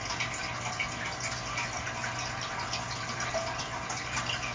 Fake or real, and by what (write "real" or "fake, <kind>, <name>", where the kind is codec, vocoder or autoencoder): real